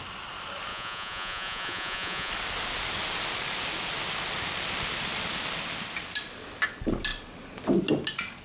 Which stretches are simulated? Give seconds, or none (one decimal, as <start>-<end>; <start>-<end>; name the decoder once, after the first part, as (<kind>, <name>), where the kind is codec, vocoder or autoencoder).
0.7-2.3 (vocoder, Vocos)